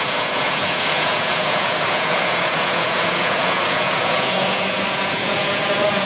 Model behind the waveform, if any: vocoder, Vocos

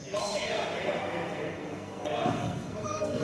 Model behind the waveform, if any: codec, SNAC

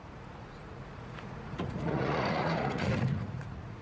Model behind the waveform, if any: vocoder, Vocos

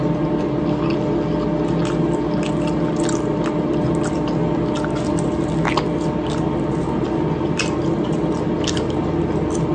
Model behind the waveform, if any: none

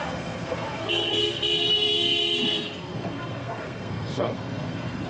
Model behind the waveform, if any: codec, SNAC